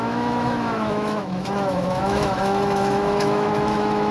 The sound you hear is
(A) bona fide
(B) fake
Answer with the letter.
B